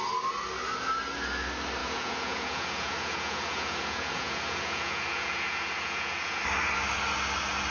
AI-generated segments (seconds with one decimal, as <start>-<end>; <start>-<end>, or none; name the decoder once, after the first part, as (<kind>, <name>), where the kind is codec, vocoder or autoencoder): 1.8-6.4 (vocoder, Vocos)